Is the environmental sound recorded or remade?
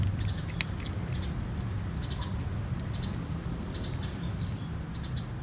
recorded